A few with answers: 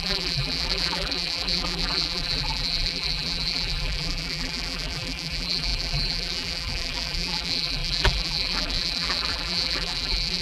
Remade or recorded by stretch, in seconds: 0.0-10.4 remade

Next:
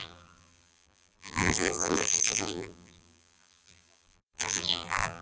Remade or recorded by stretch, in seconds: 0.0-5.2 remade

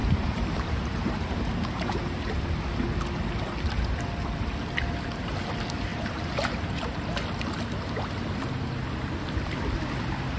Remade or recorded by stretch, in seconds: 0.0-2.5 remade; 2.5-5.9 recorded; 5.9-7.0 remade; 7.0-10.4 recorded

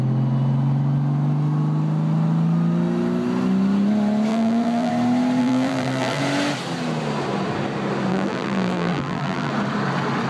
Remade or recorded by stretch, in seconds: 0.0-4.3 recorded; 4.3-4.9 remade; 4.9-5.4 recorded; 5.4-6.2 remade; 6.2-8.1 recorded; 8.1-9.5 remade; 9.5-10.3 recorded

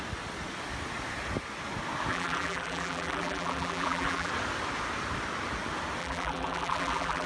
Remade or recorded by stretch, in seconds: 0.0-2.1 recorded; 2.1-4.3 remade; 4.3-6.0 recorded; 6.0-7.3 remade

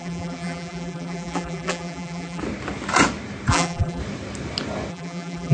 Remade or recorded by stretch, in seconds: 0.0-2.4 remade; 2.4-3.5 recorded; 3.5-4.0 remade; 4.0-4.9 recorded; 4.9-5.5 remade

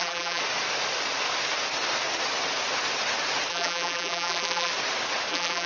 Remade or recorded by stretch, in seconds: 0.0-0.4 remade; 0.4-3.5 recorded; 3.5-4.7 remade; 4.7-5.3 recorded; 5.3-5.7 remade

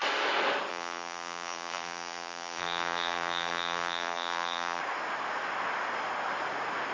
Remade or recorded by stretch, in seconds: 0.0-0.7 recorded; 0.7-4.8 remade; 4.8-6.9 recorded